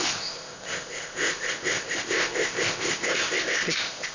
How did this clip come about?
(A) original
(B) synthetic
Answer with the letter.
B